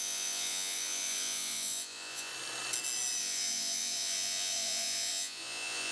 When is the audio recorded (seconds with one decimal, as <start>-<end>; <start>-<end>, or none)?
2.3-3.2